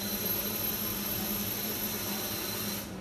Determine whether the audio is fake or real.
real